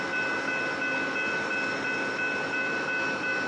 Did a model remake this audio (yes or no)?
no